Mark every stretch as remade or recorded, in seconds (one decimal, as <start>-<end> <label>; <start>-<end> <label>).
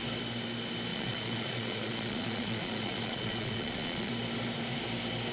0.0-0.9 recorded; 0.9-4.1 remade; 4.1-5.3 recorded